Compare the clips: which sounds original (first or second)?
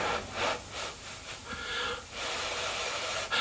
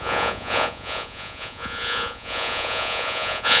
first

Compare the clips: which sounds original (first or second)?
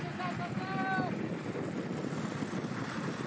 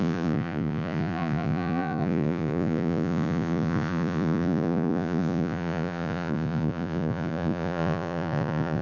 first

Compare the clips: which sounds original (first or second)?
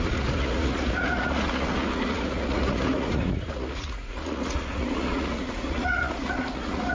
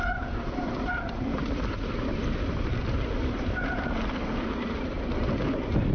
second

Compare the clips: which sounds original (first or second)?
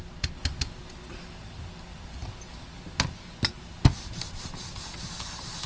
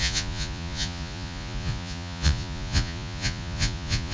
first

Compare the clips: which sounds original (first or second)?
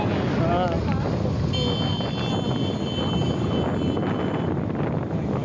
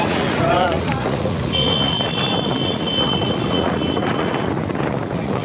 first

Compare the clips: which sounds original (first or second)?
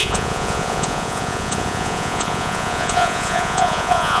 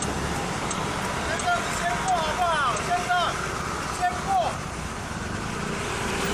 second